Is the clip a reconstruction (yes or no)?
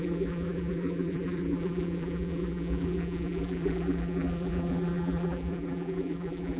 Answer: yes